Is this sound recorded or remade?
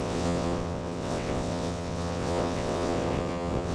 remade